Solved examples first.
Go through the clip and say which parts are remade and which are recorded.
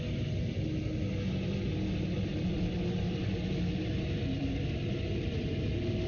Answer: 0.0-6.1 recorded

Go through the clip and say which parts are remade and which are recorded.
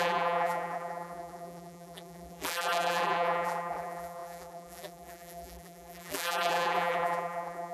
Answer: 0.0-7.7 remade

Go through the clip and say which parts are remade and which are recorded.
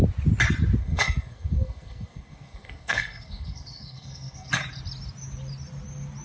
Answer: 0.0-0.8 recorded; 0.8-4.5 remade; 4.5-6.2 recorded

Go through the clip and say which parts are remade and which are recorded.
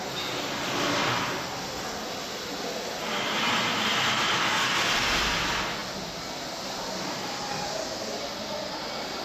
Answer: 0.0-9.2 recorded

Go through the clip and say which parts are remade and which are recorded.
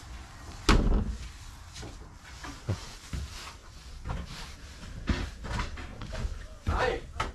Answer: 0.0-2.4 recorded; 2.4-3.1 remade; 3.1-3.6 recorded; 3.6-4.4 remade; 4.4-5.9 recorded; 5.9-6.8 remade; 6.8-7.3 recorded